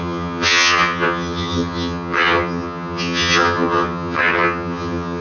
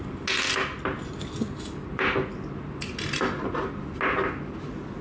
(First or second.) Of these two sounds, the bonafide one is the second